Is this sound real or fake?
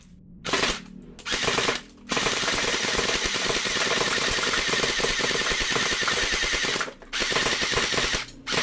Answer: real